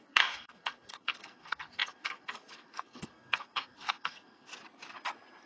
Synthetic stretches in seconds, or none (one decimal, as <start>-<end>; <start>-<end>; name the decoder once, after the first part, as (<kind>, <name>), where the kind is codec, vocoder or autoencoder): 0.0-4.5 (codec, SNAC)